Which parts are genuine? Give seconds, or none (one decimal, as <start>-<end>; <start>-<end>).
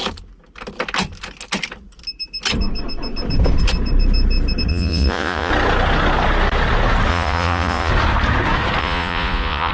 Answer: 0.0-4.7; 5.5-7.1; 7.9-8.8